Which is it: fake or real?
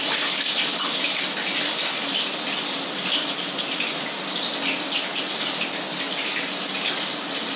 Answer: real